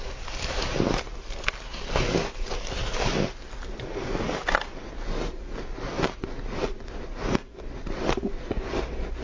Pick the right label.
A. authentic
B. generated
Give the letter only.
A